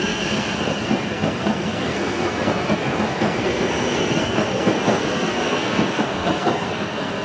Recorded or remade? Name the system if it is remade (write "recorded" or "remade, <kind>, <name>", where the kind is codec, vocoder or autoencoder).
remade, codec, SNAC